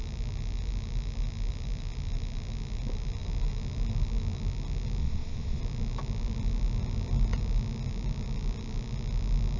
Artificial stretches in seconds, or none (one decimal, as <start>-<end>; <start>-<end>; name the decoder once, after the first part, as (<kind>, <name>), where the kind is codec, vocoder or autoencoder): 5.0-5.6 (vocoder, Vocos)